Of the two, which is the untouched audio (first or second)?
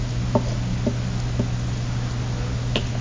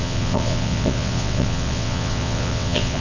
first